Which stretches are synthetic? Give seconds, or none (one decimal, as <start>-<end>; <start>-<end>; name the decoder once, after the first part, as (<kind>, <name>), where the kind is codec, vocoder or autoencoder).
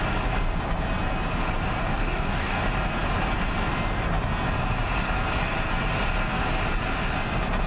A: 1.8-2.6 (codec, DAC)